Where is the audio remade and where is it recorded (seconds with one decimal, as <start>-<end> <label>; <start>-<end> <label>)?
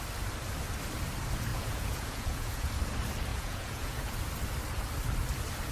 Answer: 0.0-1.5 recorded; 1.5-2.7 remade; 2.7-3.3 recorded; 3.3-4.2 remade; 4.2-5.7 recorded